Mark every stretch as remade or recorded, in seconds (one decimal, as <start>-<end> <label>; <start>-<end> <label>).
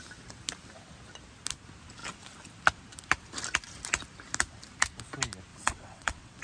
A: 0.0-5.5 recorded; 5.5-6.4 remade